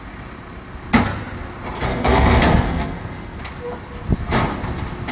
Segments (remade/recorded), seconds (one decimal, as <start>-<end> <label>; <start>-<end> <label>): 0.0-1.9 recorded; 1.9-3.4 remade; 3.4-5.1 recorded